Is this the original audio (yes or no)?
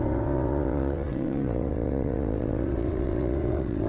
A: no